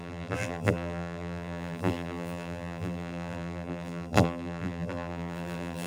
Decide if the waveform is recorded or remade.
remade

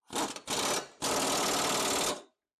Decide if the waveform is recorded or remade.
recorded